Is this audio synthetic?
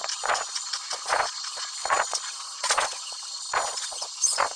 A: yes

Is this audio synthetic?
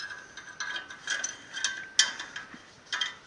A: no